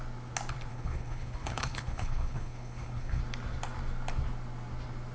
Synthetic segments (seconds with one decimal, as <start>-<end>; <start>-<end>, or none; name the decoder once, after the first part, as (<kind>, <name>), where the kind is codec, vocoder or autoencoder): 0.7-3.2 (codec, HILCodec)